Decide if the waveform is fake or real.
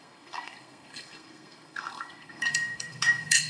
fake